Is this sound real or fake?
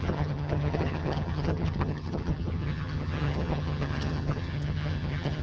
fake